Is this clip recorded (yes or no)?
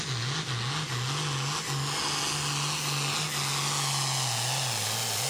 yes